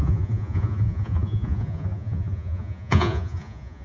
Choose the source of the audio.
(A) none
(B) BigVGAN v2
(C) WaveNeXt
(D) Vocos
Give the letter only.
D